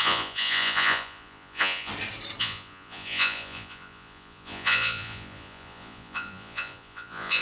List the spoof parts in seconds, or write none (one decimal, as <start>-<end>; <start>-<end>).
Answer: 0.0-1.9; 2.4-7.4